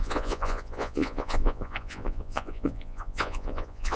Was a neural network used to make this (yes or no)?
yes